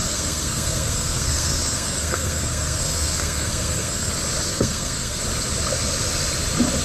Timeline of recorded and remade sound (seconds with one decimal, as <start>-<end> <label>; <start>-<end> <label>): 0.0-4.1 remade; 4.1-4.5 recorded; 4.5-5.2 remade; 5.2-6.8 recorded